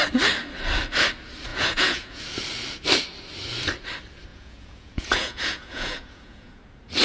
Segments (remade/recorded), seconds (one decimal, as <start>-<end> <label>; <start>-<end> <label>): 0.0-1.5 recorded; 1.5-2.2 remade; 2.2-4.3 recorded; 4.3-6.6 remade; 6.6-7.0 recorded